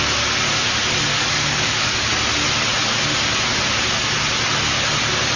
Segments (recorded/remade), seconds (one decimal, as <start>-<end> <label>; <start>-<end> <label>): 0.0-1.1 recorded; 1.1-2.1 remade; 2.1-5.4 recorded